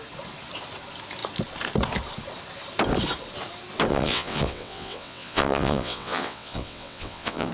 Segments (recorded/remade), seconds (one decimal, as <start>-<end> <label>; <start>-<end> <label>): 0.0-3.9 recorded; 3.9-7.5 remade